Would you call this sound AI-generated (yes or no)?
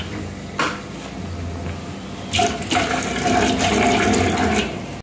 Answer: no